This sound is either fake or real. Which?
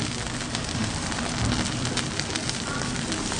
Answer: real